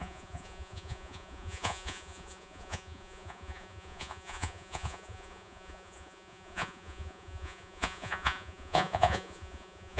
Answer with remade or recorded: remade